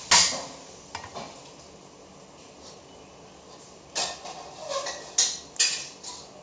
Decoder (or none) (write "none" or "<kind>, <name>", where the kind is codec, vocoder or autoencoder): none